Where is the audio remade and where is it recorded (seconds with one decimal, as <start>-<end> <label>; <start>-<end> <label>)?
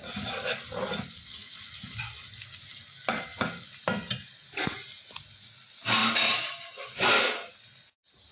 0.0-8.3 recorded